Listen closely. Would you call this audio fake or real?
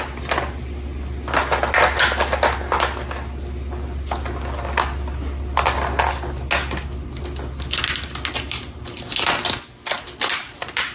real